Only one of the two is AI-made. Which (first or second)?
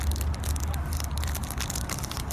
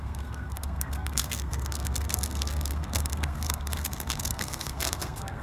second